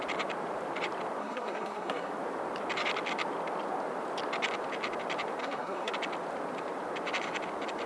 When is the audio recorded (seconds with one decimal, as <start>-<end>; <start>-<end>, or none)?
0.0-1.2; 2.1-5.4; 5.9-7.9